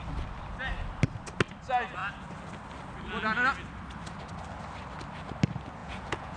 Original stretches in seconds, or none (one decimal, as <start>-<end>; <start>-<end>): 0.0-5.8